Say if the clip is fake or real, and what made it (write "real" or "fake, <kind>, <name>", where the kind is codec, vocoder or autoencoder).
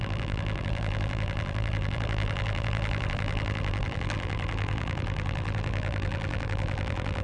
fake, vocoder, BigVGAN v2